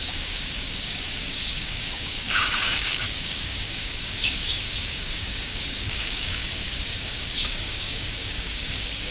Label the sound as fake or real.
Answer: fake